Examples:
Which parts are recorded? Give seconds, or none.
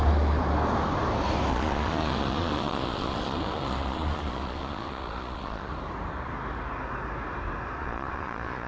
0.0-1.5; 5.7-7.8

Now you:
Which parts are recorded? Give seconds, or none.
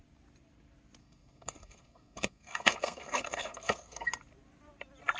0.0-1.0; 4.1-5.2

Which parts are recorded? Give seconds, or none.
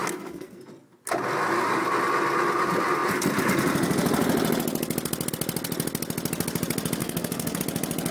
0.6-7.0; 7.6-8.1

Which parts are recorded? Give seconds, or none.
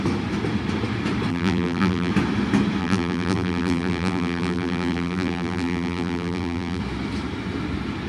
0.0-1.3; 2.1-2.8; 6.8-8.1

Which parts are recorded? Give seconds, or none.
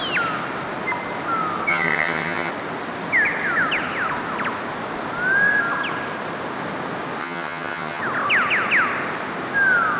0.0-1.7; 2.5-7.2; 8.0-10.0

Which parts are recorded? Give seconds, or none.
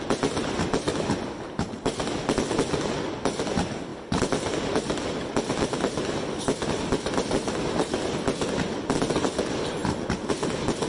0.0-10.9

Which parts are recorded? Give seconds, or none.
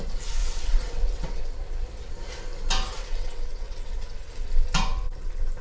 0.0-0.4; 1.4-2.9; 4.3-5.6